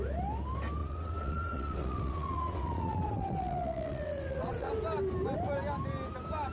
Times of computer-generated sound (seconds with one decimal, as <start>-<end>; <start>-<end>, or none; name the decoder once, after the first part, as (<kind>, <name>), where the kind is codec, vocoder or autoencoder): 0.8-4.7 (vocoder, WaveNeXt)